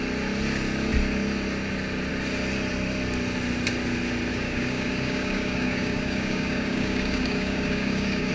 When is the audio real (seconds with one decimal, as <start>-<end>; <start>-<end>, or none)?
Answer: 0.0-4.3